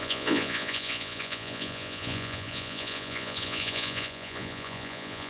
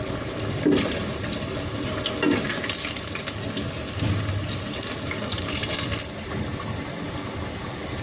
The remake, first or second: first